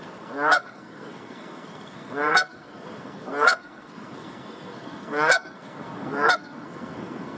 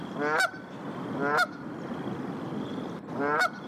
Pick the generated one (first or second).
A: first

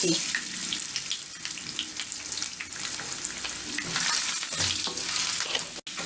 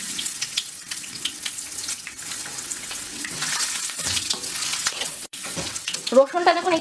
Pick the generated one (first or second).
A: second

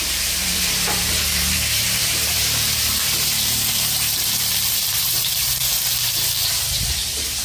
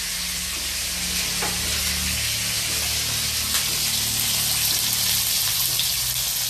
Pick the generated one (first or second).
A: first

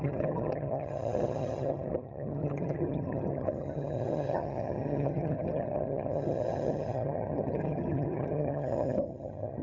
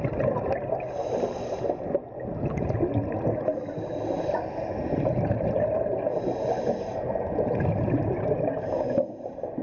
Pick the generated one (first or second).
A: first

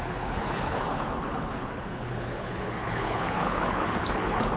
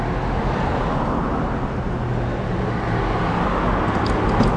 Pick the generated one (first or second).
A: first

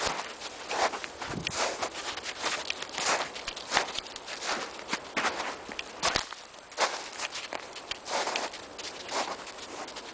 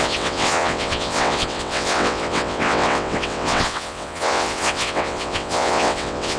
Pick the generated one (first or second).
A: second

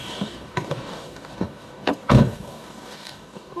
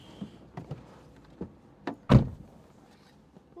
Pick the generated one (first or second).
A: first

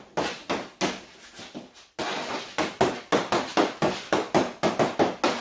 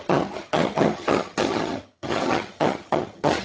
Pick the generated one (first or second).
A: second